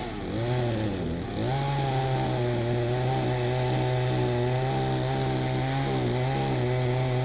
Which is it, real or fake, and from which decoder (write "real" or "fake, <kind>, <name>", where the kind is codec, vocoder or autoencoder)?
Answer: real